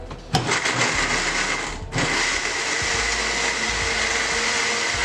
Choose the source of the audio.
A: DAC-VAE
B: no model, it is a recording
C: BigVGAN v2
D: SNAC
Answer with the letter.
B